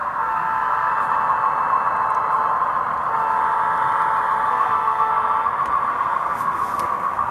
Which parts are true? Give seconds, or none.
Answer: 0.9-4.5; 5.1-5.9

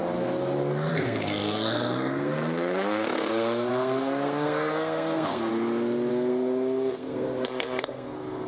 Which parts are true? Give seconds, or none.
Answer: 0.0-0.9; 5.5-6.1

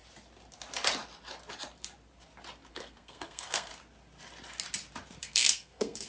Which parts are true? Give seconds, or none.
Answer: 0.0-2.7; 3.7-5.2

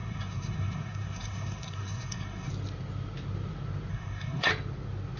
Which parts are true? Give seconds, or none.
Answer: 2.5-3.9; 4.5-5.2

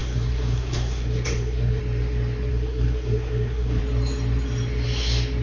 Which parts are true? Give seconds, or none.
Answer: 1.8-2.5; 3.8-5.4

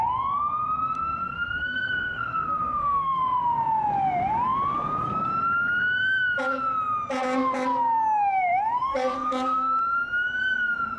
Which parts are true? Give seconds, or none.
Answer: 0.0-1.2; 3.2-8.9; 9.8-11.0

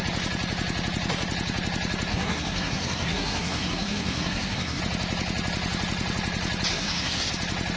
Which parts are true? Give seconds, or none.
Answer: 0.0-2.1; 4.8-6.7; 7.3-7.8